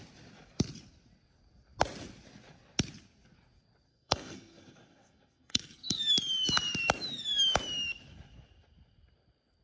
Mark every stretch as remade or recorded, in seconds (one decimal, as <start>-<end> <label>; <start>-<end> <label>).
0.0-3.9 recorded; 3.9-6.0 remade; 6.0-9.6 recorded